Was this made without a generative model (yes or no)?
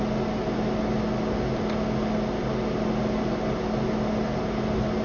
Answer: yes